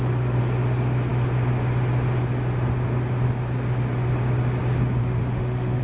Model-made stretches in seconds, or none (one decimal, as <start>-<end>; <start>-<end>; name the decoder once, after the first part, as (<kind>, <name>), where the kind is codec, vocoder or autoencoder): 5.0-5.8 (autoencoder, DAC-VAE)